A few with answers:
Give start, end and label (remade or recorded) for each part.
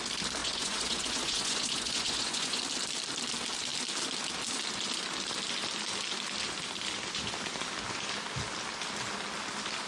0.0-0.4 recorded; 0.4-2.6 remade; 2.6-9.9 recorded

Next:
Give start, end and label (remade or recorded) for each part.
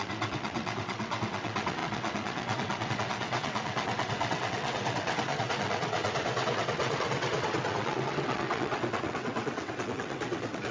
0.0-10.7 remade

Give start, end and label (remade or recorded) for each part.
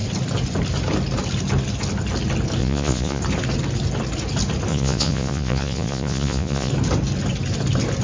0.0-2.6 recorded; 2.6-3.2 remade; 3.2-4.7 recorded; 4.7-6.7 remade; 6.7-8.0 recorded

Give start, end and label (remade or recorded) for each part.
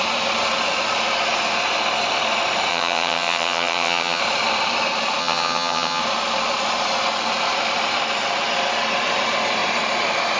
0.0-2.7 recorded; 2.7-4.2 remade; 4.2-5.2 recorded; 5.2-6.0 remade; 6.0-10.4 recorded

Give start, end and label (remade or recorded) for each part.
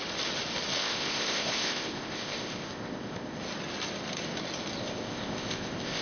0.0-0.8 recorded; 0.8-3.4 remade; 3.4-4.8 recorded; 4.8-6.0 remade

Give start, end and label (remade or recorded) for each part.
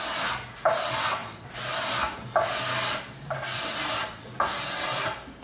0.0-5.4 recorded